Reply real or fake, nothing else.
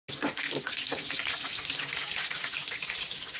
real